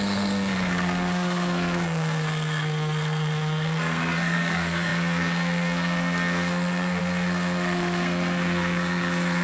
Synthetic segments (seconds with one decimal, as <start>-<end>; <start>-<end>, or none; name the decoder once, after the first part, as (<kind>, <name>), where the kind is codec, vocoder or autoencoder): 0.0-9.4 (codec, SNAC)